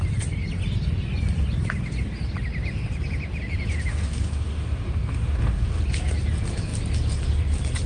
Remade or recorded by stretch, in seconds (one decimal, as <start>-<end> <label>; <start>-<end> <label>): 0.0-3.9 recorded; 3.9-5.8 remade; 5.8-7.9 recorded